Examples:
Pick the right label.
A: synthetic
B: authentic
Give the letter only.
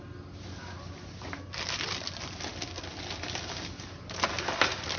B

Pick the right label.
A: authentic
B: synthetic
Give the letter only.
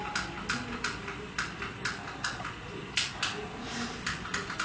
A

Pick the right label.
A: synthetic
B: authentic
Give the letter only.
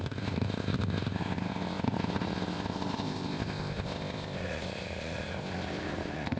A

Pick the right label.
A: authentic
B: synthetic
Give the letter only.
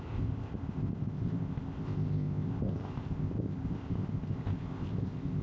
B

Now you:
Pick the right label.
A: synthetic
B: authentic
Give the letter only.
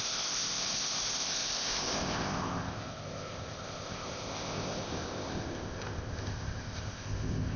A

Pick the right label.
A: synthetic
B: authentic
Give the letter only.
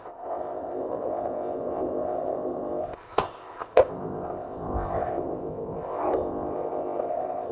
A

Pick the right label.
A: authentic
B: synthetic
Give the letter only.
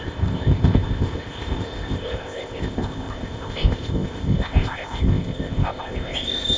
B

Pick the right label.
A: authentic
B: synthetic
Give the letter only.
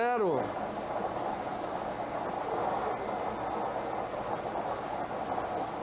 A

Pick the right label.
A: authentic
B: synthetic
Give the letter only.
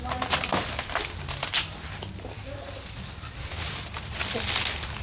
A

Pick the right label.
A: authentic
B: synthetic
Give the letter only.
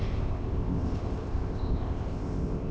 B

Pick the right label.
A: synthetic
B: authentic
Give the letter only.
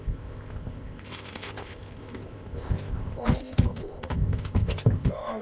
A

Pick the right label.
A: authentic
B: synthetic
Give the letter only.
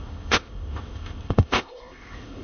B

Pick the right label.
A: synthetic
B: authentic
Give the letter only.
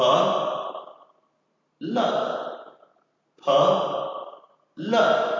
B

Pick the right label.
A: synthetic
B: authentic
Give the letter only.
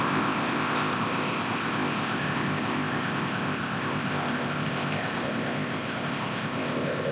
A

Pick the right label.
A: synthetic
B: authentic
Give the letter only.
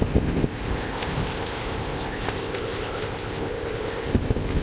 A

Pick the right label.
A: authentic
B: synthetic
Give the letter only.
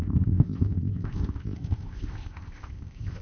B